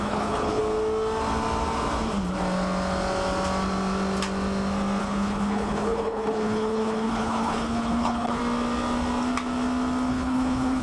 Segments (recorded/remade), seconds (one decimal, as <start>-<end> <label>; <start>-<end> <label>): 0.0-0.6 remade; 0.6-5.0 recorded; 5.0-8.4 remade; 8.4-10.1 recorded; 10.1-10.8 remade